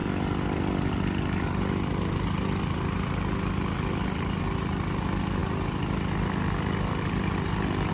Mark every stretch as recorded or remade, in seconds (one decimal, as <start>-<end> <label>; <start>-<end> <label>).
0.0-7.9 recorded